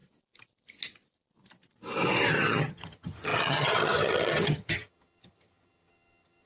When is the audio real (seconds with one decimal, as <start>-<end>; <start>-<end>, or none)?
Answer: 0.0-2.3

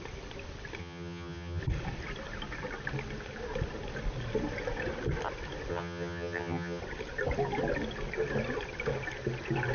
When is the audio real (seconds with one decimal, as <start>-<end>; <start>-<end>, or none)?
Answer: 0.0-0.8; 1.6-5.7; 6.8-9.7

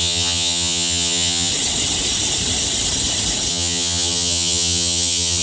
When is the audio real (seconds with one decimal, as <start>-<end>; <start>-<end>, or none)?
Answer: 1.5-3.5

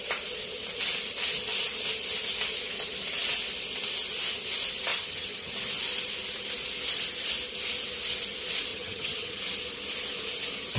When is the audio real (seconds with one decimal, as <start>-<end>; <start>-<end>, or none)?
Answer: 0.0-4.9; 5.5-8.7; 9.4-10.8